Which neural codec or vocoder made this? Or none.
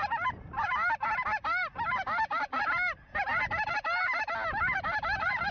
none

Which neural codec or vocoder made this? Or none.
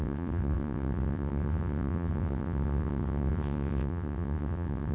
vocoder, WaveNeXt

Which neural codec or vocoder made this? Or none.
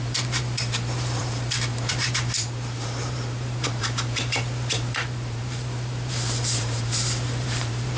vocoder, BigVGAN v2